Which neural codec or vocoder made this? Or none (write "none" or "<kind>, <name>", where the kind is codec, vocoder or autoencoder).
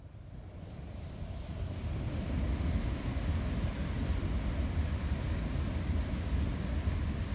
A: none